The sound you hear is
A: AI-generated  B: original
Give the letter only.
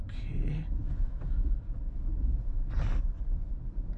A